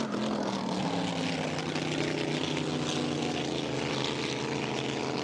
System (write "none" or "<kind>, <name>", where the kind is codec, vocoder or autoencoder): none